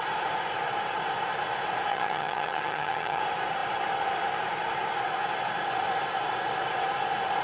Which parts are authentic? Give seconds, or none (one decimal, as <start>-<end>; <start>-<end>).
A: 0.0-1.9; 3.2-7.4